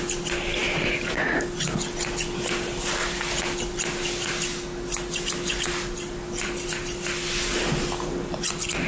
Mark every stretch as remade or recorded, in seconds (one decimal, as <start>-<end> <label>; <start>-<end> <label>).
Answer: 0.0-8.9 recorded